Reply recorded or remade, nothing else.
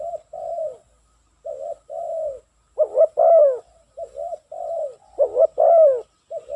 recorded